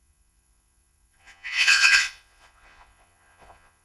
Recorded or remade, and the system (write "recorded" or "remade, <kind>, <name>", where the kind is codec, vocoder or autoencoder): remade, vocoder, Vocos